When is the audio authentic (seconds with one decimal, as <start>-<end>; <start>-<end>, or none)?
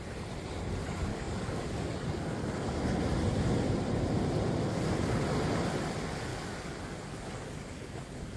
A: 0.0-1.1; 2.8-6.3